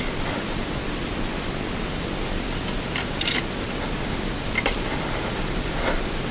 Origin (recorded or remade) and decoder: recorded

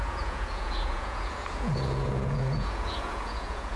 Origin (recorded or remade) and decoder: remade, vocoder, Vocos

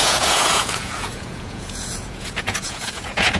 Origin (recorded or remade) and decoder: remade, vocoder, Vocos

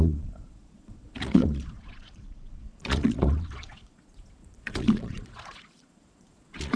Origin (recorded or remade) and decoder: remade, vocoder, Vocos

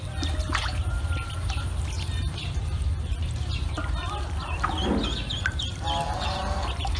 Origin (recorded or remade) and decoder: recorded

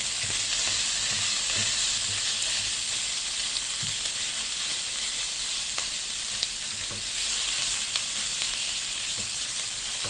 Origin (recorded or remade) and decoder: recorded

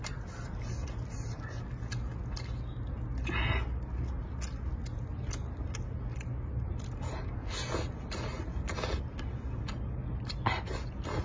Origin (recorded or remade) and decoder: recorded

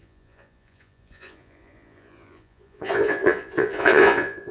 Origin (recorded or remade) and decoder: remade, vocoder, Vocos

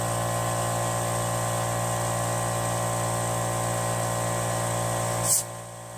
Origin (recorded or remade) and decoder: recorded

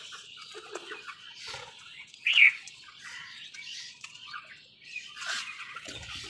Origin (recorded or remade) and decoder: remade, vocoder, Vocos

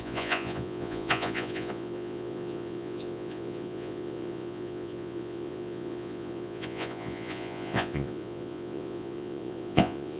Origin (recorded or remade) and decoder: remade, vocoder, Vocos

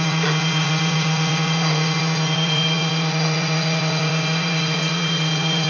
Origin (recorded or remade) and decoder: remade, vocoder, Vocos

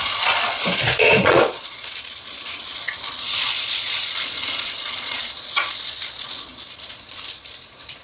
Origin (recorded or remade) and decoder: remade, vocoder, Vocos